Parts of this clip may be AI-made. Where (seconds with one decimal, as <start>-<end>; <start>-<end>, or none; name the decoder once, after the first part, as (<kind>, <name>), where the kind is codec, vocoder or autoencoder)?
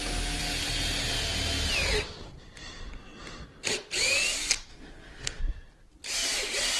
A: 4.7-5.4 (codec, SNAC)